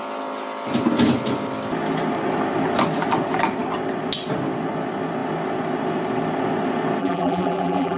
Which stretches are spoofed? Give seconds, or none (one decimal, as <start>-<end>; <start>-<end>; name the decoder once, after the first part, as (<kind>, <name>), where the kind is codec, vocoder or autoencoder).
7.0-8.0 (vocoder, BigVGAN v2)